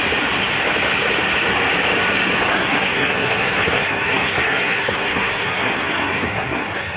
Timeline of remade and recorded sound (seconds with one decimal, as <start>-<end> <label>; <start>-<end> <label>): 0.0-2.5 recorded; 2.5-7.0 remade